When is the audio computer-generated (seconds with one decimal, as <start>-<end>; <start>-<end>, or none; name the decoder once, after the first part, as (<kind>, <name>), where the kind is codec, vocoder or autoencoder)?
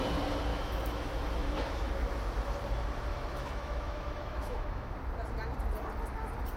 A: 0.5-1.9 (autoencoder, DAC-VAE); 3.1-4.9